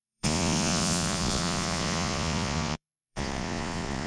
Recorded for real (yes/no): no